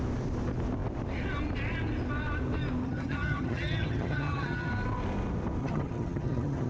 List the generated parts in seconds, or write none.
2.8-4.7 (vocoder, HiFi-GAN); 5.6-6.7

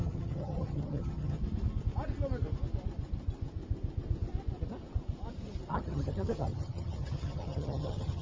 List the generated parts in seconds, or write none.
0.0-1.4 (vocoder, HiFi-GAN); 5.7-8.2

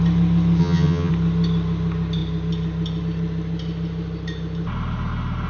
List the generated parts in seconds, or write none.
0.6-1.1 (vocoder, HiFi-GAN)

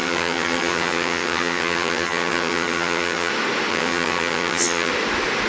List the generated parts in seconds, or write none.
0.0-3.3 (vocoder, HiFi-GAN); 3.7-4.9

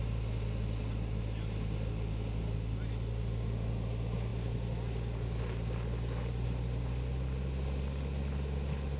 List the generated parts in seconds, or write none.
none